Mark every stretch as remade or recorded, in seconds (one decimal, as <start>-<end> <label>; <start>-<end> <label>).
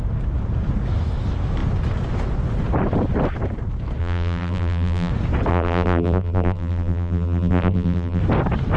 0.0-4.0 recorded; 4.0-5.1 remade; 5.1-5.5 recorded; 5.5-8.2 remade; 8.2-8.8 recorded